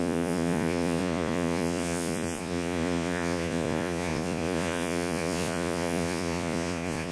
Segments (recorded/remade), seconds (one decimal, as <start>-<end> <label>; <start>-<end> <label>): 0.0-7.1 remade